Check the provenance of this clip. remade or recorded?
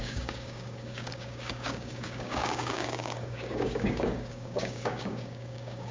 remade